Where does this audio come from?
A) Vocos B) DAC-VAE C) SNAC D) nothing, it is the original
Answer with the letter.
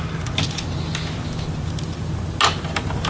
D